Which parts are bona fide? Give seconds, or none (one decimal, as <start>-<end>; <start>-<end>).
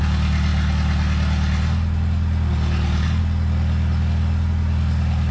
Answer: 0.0-5.3